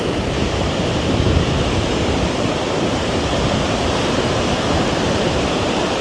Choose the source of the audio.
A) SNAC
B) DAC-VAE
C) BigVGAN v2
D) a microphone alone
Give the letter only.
C